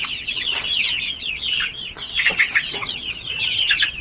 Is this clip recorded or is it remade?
remade